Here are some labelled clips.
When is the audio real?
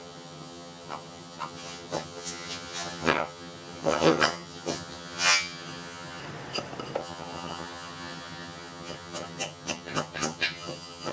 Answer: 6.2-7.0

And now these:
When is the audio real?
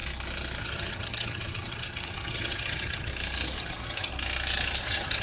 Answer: 0.0-0.6; 3.1-3.6; 4.1-4.8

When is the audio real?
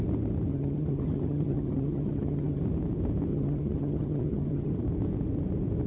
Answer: 0.0-0.5; 2.6-3.3; 4.7-5.9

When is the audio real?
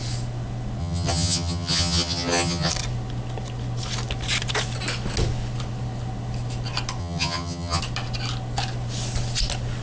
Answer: 0.0-0.8; 2.7-7.0; 7.8-9.8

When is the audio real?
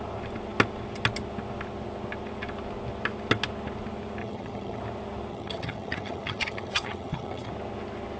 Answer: 0.0-4.2; 4.8-5.3; 7.5-8.2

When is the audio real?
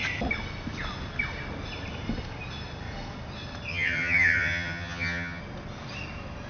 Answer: 0.0-3.7; 5.4-6.5